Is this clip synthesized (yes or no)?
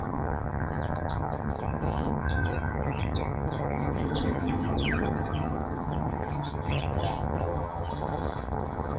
yes